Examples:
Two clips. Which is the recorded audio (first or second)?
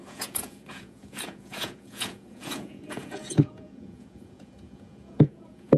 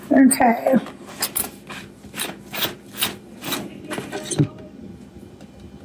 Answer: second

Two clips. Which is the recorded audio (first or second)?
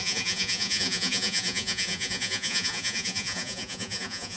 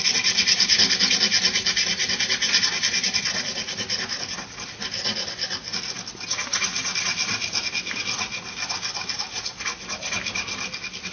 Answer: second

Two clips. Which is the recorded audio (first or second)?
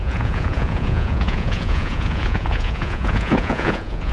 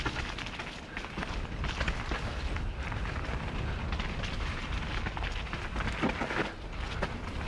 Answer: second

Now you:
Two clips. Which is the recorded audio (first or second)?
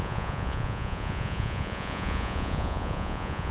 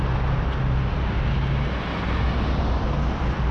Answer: second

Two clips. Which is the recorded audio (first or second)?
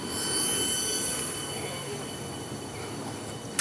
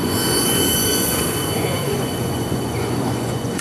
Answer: first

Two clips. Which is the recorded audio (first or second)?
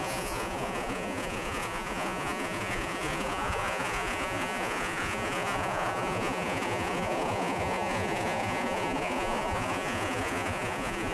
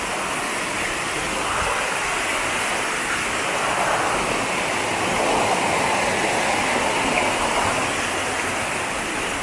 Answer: second